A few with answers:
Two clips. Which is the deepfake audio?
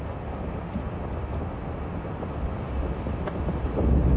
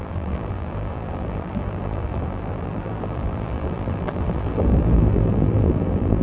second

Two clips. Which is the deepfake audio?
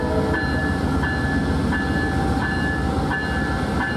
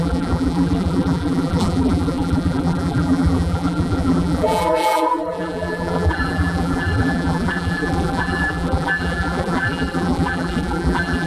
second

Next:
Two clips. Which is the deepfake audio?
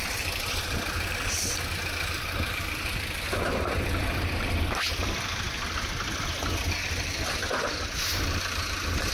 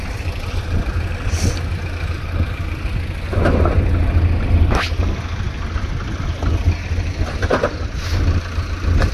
first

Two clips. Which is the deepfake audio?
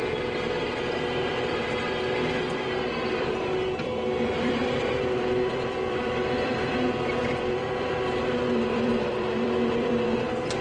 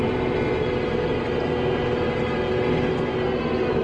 first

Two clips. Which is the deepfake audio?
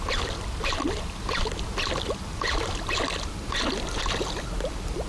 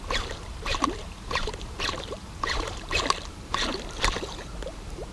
second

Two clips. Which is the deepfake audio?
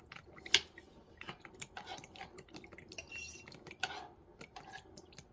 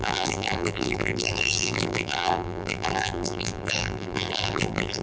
second